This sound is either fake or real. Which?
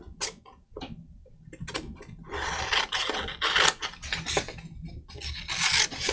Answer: real